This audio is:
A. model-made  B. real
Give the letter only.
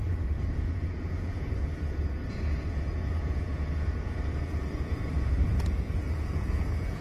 A